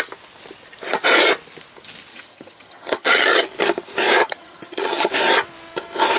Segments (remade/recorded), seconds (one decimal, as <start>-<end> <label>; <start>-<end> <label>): 0.0-2.1 recorded; 2.1-3.4 remade; 3.4-4.2 recorded; 4.2-5.1 remade; 5.1-6.2 recorded